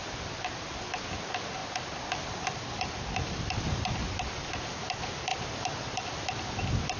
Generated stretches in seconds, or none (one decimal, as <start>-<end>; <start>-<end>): 1.6-4.3; 5.3-6.6